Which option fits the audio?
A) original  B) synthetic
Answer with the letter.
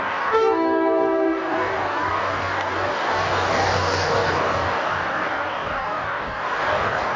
B